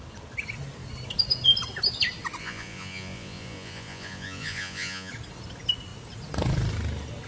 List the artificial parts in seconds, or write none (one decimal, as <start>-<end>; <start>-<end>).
2.4-5.1